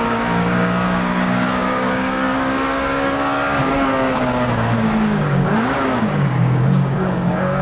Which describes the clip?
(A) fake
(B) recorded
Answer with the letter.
A